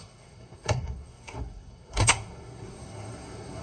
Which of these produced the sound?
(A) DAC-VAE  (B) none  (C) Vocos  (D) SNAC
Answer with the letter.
D